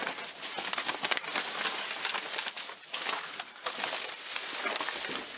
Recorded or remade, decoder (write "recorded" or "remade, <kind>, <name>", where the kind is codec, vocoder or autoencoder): recorded